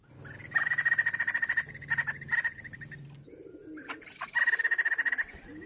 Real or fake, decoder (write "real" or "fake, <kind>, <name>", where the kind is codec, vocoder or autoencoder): real